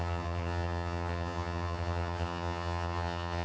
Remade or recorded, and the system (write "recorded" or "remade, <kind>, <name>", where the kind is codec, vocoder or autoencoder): remade, vocoder, HiFi-GAN